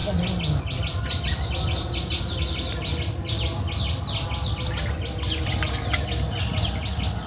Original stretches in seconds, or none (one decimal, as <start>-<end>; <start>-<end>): 0.0-7.3